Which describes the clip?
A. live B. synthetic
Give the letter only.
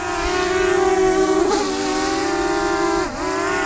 A